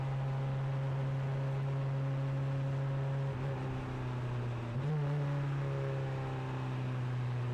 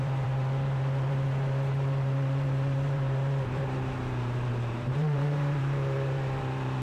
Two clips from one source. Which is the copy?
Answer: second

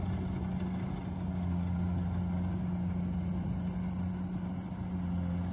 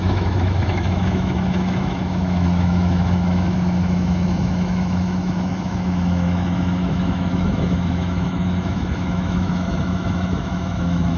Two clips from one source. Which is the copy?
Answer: second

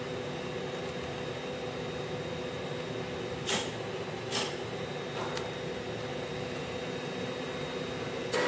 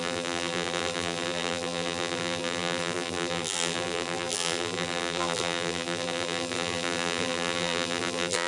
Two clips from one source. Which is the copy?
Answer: second